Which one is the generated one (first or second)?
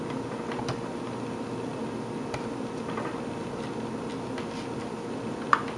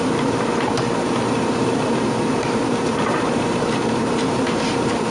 second